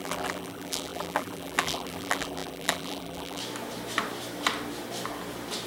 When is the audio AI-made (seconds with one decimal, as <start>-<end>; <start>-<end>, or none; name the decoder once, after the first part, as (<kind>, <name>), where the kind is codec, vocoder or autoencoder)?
0.0-3.4 (vocoder, BigVGAN v2)